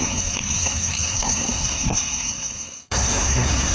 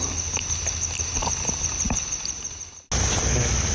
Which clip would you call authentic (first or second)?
second